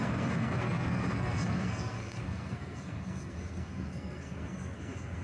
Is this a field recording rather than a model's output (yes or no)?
no